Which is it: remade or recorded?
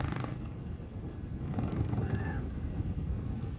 remade